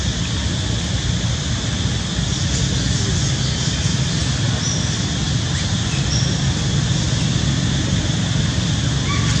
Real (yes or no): yes